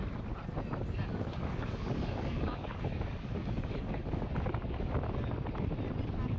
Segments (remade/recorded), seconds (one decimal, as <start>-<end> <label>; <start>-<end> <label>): 0.0-1.1 recorded; 1.1-4.9 remade; 4.9-6.4 recorded